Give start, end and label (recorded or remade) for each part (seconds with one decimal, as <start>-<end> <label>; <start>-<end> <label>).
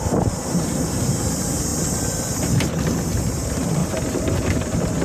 0.0-1.7 remade; 1.7-3.3 recorded; 3.3-3.8 remade; 3.8-5.0 recorded